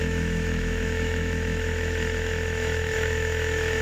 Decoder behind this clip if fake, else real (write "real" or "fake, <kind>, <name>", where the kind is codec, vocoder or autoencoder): fake, autoencoder, DAC-VAE